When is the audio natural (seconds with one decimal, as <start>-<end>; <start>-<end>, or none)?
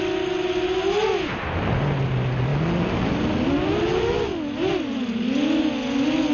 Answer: 0.0-6.3